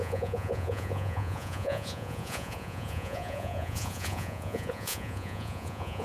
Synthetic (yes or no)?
yes